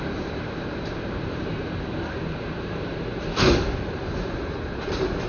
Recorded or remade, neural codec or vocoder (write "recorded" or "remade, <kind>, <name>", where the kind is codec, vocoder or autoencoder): remade, vocoder, BigVGAN v2